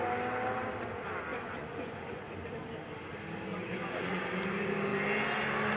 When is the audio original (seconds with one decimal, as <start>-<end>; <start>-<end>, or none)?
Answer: 0.0-1.3; 2.2-3.5; 4.2-5.8